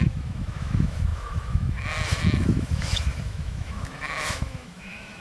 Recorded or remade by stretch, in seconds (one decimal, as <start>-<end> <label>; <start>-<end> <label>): 0.0-5.2 remade